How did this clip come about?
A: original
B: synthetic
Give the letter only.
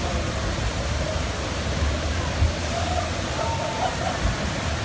A